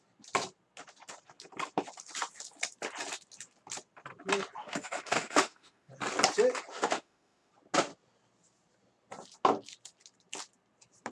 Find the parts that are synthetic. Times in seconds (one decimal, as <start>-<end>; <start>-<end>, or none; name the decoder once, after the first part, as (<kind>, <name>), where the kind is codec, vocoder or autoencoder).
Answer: 4.6-5.9 (autoencoder, DAC-VAE); 6.7-7.5